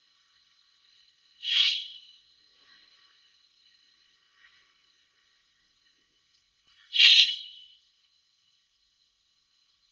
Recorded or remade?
remade